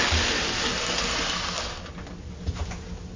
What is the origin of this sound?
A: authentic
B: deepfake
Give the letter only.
A